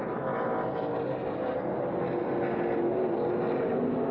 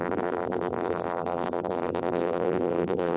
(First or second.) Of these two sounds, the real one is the first